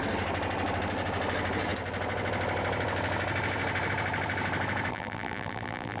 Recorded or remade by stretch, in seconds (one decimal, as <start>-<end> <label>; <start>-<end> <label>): 0.0-4.9 recorded; 4.9-6.0 remade